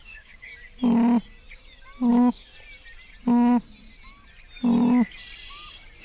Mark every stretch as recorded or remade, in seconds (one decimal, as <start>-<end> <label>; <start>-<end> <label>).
0.0-0.5 remade; 0.5-2.1 recorded; 2.1-2.5 remade; 2.5-6.0 recorded